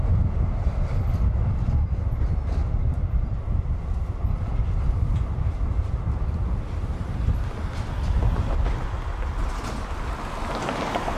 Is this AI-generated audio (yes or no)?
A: no